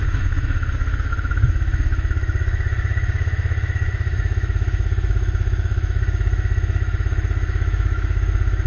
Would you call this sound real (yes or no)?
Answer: no